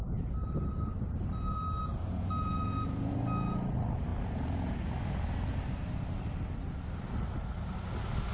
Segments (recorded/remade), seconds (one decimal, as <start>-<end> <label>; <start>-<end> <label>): 0.0-8.3 recorded